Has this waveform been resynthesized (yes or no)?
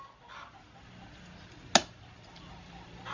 no